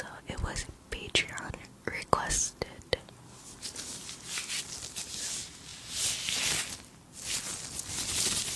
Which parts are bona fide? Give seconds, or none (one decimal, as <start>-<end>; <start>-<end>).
0.0-8.6